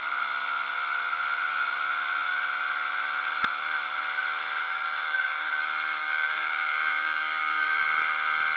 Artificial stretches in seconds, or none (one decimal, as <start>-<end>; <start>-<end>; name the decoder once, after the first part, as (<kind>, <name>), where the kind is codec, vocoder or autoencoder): 4.6-5.5 (codec, DAC); 6.0-7.8